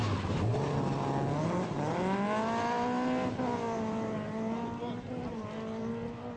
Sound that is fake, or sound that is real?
real